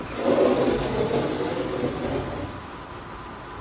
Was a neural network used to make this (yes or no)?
no